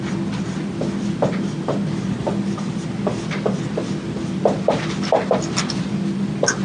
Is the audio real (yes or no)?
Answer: yes